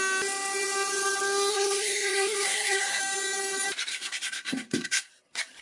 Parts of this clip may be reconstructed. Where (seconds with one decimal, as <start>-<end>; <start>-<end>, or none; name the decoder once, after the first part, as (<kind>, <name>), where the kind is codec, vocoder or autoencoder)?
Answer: 1.5-3.0 (codec, SNAC); 3.9-5.1